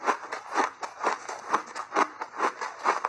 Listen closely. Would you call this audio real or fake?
real